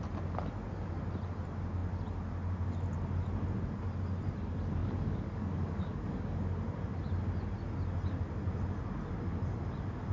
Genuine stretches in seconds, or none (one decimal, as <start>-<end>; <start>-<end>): 0.0-4.8; 6.4-10.1